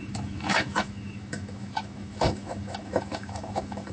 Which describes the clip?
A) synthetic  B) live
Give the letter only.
A